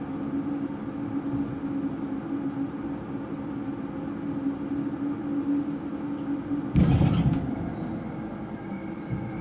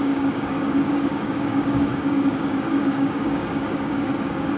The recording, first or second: first